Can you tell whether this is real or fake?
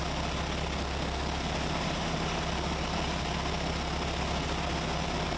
real